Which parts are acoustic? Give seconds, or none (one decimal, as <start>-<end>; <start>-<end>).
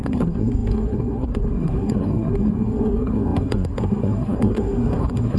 none